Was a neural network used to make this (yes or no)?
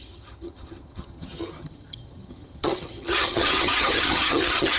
yes